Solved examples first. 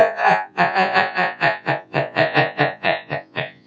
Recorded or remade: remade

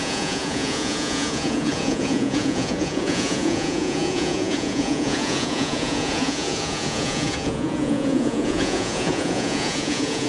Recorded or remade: remade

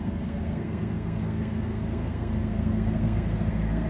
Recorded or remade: remade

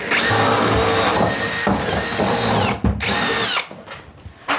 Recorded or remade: recorded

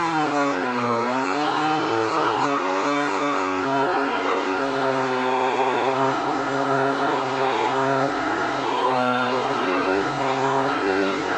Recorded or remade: remade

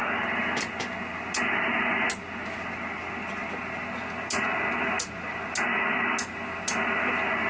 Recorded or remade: recorded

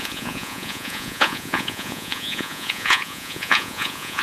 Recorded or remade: remade